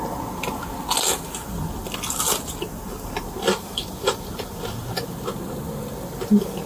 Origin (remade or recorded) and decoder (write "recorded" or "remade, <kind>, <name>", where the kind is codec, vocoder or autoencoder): recorded